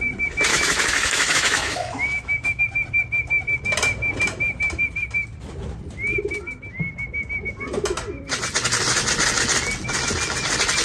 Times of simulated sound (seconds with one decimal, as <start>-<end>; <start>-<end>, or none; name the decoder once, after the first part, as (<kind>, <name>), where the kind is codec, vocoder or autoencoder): 0.5-2.6 (autoencoder, DAC-VAE)